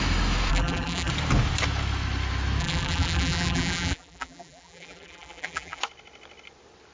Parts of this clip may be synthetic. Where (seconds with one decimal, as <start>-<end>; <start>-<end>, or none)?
0.5-1.1; 2.6-5.8